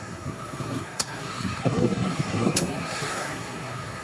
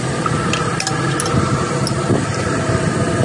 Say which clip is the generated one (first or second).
first